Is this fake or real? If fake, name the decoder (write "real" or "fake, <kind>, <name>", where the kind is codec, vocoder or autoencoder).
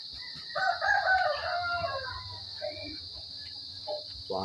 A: fake, vocoder, BigVGAN v2